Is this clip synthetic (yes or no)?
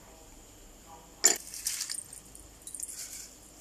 no